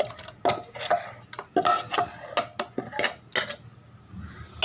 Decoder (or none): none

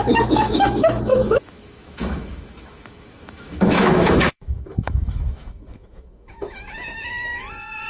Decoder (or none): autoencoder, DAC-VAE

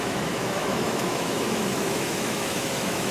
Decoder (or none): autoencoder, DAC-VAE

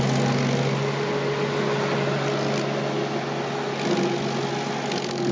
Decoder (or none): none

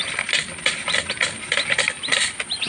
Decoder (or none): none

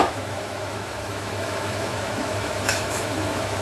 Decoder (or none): autoencoder, DAC-VAE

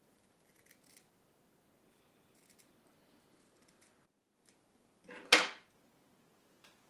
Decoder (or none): none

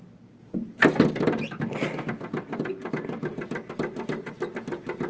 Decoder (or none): none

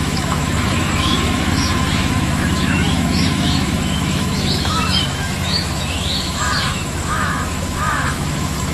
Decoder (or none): autoencoder, DAC-VAE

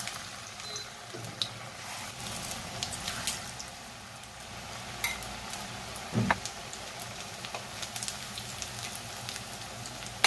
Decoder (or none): none